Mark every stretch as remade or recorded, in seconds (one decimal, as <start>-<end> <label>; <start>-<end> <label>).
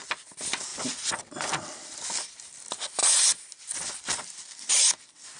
0.0-5.4 recorded